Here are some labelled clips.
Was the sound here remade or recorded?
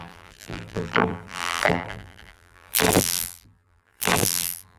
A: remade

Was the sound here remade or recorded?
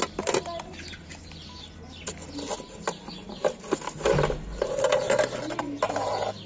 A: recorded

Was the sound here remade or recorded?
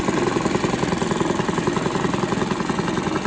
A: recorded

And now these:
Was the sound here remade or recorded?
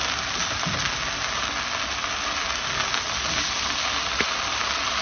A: recorded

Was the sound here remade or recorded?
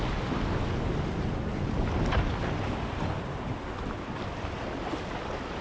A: recorded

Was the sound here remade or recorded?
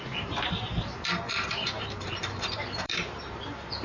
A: remade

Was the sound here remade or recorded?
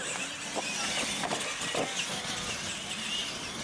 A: recorded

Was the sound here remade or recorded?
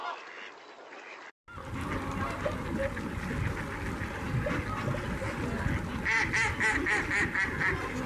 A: recorded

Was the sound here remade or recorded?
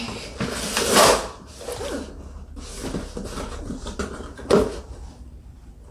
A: recorded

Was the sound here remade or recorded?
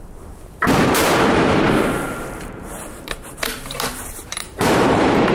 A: remade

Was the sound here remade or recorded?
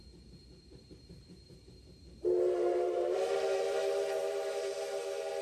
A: remade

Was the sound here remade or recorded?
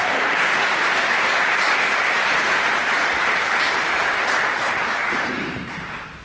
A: remade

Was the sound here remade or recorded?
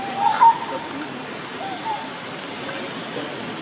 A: recorded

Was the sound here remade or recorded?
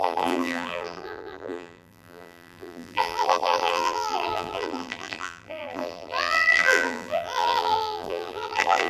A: remade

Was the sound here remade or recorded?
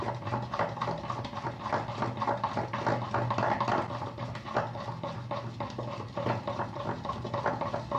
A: remade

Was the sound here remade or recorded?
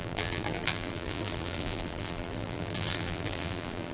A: remade